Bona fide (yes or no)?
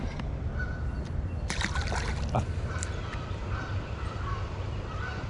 no